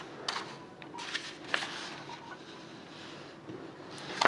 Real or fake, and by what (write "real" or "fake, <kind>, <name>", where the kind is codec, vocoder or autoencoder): real